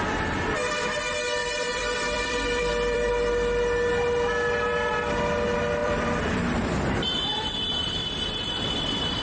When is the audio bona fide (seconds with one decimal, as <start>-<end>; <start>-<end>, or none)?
0.0-1.4; 3.1-5.8; 8.3-9.2

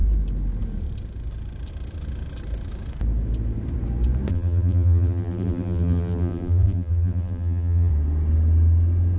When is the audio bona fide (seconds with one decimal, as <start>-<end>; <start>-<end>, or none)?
0.0-4.3; 7.9-9.2